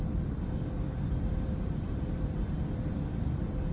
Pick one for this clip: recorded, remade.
remade